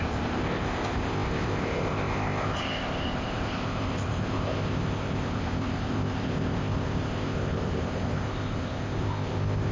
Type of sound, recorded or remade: remade